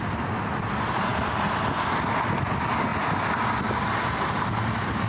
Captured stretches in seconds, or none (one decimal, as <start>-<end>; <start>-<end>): 0.0-2.9